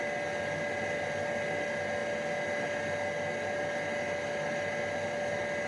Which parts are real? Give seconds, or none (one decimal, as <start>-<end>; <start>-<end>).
0.0-5.7